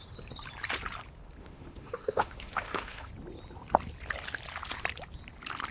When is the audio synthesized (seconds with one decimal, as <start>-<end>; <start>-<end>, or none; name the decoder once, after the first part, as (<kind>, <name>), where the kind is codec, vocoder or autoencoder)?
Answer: 1.4-3.1 (autoencoder, DAC-VAE)